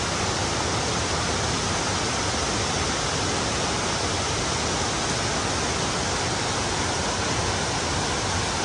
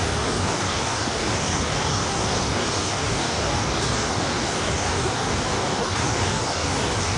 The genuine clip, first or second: first